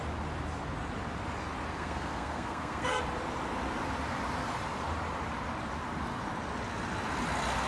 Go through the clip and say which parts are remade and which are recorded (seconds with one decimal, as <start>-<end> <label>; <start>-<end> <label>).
0.0-1.7 recorded; 1.7-3.0 remade; 3.0-7.7 recorded